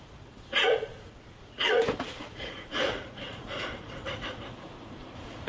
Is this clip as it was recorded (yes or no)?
no